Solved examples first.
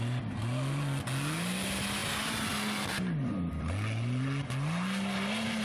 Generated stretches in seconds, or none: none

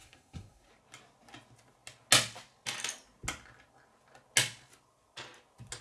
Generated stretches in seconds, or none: 0.0-0.7 (codec, SNAC)